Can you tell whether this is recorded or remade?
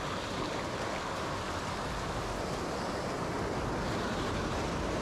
recorded